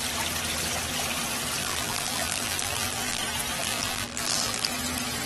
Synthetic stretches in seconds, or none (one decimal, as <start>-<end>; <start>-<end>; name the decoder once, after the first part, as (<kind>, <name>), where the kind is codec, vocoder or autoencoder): 1.6-3.2 (vocoder, BigVGAN v2); 3.6-4.7